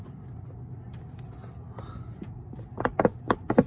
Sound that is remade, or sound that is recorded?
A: recorded